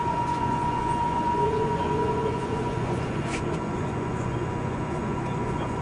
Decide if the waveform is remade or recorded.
remade